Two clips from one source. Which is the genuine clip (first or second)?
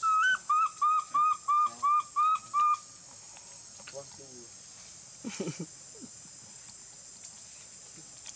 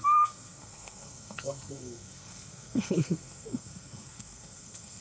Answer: first